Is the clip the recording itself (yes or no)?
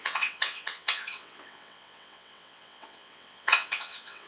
no